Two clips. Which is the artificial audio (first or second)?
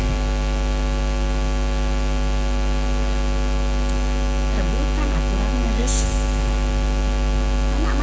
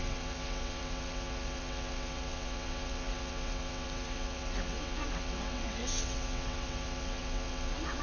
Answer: second